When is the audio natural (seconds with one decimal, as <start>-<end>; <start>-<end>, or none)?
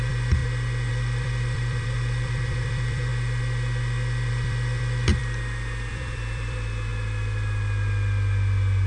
0.4-0.9; 3.1-4.3; 5.2-5.9; 6.9-8.9